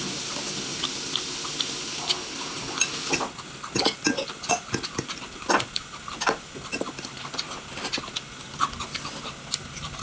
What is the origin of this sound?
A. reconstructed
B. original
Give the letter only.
B